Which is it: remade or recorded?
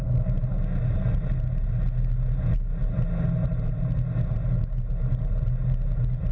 recorded